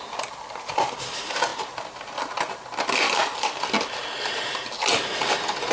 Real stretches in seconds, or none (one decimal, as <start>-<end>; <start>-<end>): 1.5-3.0

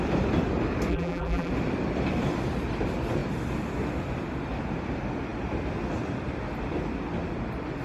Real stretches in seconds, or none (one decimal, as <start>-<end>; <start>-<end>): 0.0-0.9; 1.5-7.8